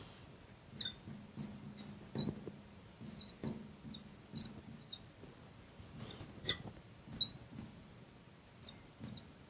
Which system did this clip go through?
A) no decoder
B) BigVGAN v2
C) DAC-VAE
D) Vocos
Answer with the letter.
A